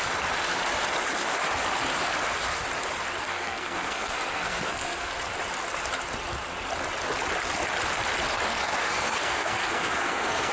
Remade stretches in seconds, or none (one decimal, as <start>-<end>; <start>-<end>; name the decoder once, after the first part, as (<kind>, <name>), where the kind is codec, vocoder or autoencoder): 3.2-5.1 (codec, SNAC); 8.5-10.5